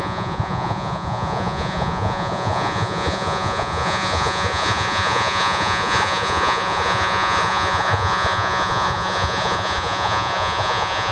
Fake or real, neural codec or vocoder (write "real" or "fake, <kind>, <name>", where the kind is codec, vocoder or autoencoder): fake, vocoder, Vocos